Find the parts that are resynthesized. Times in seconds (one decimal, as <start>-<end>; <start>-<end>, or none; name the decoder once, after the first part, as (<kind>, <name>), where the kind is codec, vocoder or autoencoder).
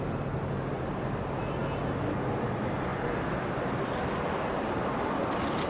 none